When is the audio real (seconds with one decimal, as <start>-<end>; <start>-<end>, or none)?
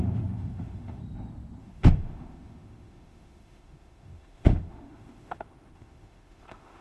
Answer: 1.0-1.6